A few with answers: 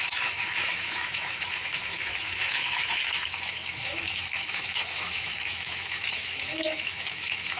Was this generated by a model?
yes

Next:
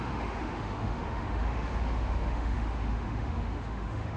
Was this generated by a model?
yes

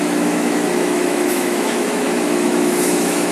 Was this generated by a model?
yes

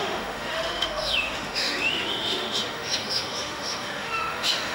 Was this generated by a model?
yes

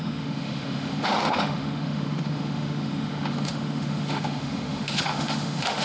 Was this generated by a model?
yes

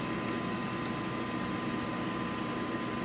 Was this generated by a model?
no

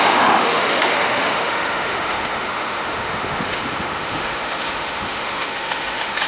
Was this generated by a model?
yes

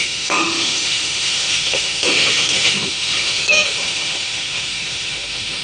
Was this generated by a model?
yes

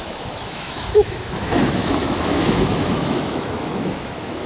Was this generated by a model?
yes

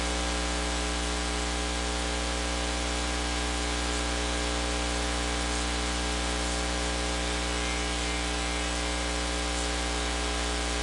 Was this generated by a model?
no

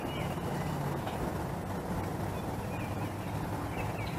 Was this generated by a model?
no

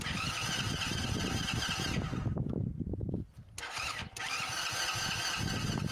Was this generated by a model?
no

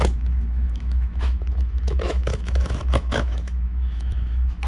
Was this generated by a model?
yes